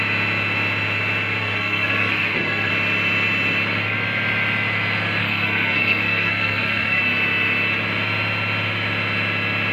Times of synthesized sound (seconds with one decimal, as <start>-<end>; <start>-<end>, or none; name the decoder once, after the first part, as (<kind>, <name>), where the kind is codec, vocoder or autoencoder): 1.4-2.7 (codec, SNAC); 5.2-7.0